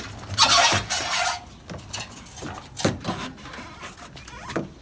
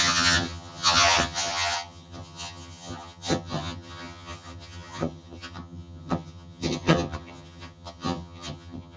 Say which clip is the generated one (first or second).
second